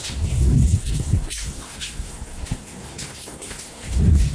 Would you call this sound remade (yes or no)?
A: yes